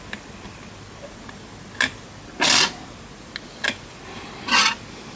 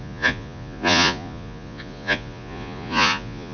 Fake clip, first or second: second